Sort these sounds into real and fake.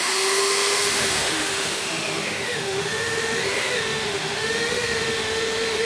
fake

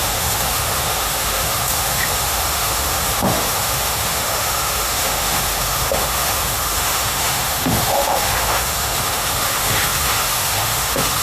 fake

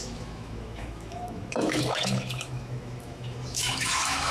fake